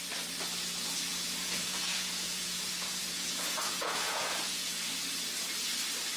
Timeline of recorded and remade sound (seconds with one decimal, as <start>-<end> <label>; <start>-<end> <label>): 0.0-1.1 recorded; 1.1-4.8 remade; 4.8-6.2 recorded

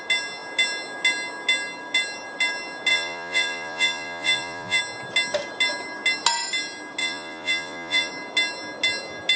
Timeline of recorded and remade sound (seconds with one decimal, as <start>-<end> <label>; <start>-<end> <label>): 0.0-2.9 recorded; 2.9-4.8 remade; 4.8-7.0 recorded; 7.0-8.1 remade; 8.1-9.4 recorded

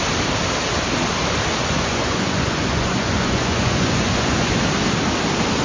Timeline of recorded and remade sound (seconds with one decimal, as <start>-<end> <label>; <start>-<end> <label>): 0.0-1.6 recorded; 1.6-4.5 remade; 4.5-5.6 recorded

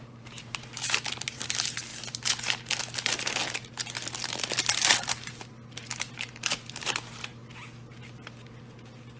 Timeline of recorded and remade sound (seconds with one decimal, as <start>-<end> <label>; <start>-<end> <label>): 0.0-9.2 recorded

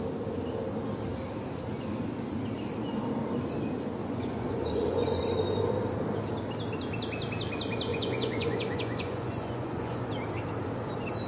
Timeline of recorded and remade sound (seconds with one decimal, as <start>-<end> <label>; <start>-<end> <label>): 0.0-4.0 recorded; 4.0-5.2 remade; 5.2-7.9 recorded; 7.9-10.1 remade; 10.1-11.3 recorded

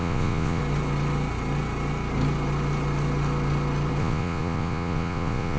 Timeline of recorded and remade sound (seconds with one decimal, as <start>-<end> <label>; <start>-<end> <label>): 0.0-0.6 remade; 0.6-4.0 recorded; 4.0-5.6 remade

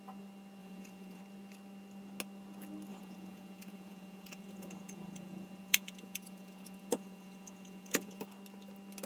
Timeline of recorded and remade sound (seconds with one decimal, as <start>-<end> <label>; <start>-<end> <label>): 0.0-0.6 recorded; 0.6-1.2 remade; 1.2-2.9 recorded; 2.9-8.2 remade; 8.2-9.1 recorded